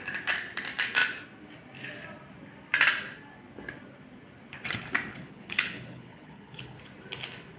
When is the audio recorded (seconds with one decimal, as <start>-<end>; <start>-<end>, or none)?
0.0-5.1; 6.8-7.6